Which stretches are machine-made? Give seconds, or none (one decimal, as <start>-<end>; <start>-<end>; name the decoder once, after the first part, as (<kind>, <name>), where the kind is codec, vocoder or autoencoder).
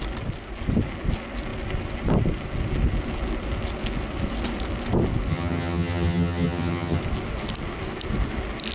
5.3-7.0 (vocoder, HiFi-GAN)